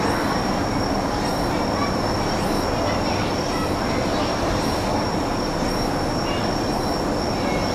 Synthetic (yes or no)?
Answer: no